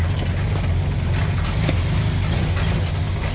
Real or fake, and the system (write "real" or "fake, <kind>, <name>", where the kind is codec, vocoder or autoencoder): real